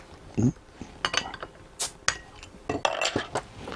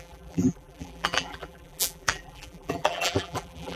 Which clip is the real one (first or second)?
first